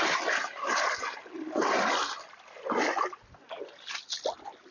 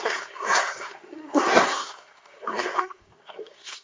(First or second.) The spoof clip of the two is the second